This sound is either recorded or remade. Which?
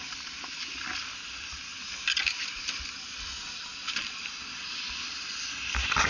recorded